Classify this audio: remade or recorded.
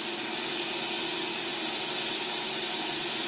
recorded